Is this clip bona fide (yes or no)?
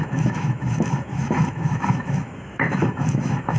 no